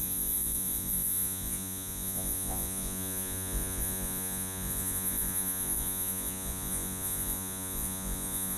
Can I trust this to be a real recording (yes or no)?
no